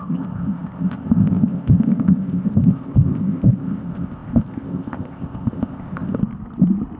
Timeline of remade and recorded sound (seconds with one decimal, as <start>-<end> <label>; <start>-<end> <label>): 0.0-6.2 remade; 6.2-7.0 recorded

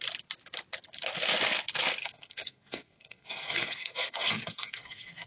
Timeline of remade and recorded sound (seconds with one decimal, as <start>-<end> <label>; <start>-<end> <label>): 0.0-2.0 recorded; 2.0-5.3 remade

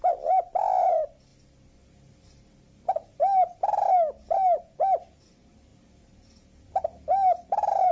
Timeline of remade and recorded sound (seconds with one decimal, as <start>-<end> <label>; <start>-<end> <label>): 0.0-7.9 recorded

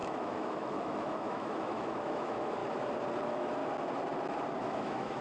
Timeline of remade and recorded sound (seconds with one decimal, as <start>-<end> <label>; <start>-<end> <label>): 0.0-2.6 remade; 2.6-3.2 recorded; 3.2-3.6 remade; 3.6-4.6 recorded; 4.6-5.2 remade